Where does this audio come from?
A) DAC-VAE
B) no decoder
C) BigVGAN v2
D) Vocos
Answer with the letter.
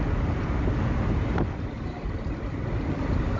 B